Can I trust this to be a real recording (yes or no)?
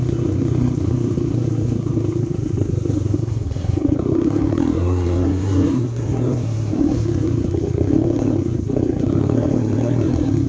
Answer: no